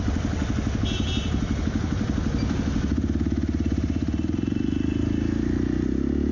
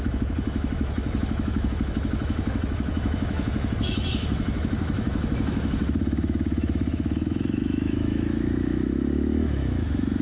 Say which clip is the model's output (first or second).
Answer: second